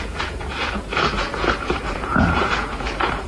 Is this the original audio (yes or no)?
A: no